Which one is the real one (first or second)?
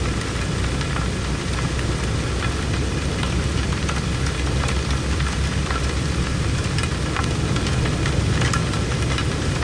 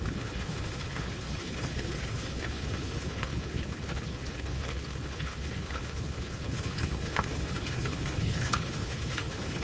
first